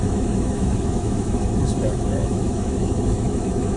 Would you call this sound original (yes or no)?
no